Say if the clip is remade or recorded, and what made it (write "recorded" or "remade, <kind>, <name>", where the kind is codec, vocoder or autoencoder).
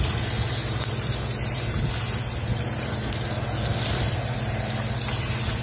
recorded